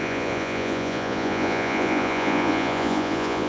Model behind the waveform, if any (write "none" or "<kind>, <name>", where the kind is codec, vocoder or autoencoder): vocoder, Vocos